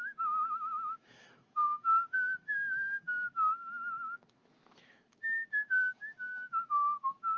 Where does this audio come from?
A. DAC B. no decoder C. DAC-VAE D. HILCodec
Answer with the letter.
C